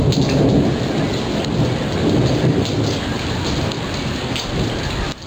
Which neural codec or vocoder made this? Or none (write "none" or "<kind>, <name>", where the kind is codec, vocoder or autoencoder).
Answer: none